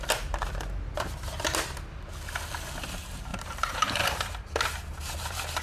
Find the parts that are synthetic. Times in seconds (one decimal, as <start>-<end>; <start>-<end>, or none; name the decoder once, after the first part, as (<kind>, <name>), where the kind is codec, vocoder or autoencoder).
3.3-4.4 (vocoder, BigVGAN v2)